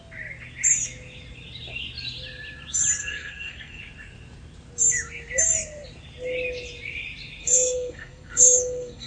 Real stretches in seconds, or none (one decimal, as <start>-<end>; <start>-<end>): 0.0-3.0; 3.8-7.4